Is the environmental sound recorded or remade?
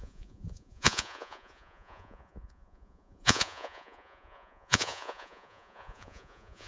remade